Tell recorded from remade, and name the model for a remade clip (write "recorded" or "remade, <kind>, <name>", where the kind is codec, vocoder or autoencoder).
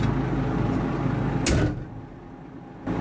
recorded